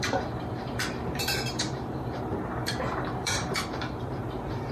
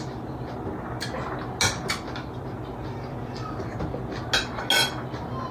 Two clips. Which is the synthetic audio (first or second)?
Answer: first